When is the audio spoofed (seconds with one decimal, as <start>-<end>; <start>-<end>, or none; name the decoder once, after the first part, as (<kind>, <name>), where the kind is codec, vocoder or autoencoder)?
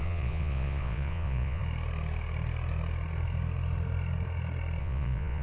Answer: 0.0-1.6 (vocoder, Vocos); 4.8-5.4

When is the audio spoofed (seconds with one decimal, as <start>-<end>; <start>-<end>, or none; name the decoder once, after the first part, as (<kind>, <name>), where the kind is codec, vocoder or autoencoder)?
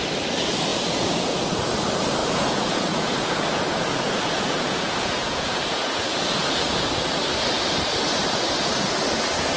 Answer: 0.7-1.7 (vocoder, Vocos); 2.2-6.8